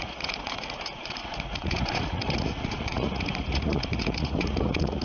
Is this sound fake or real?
fake